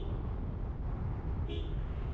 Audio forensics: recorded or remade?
recorded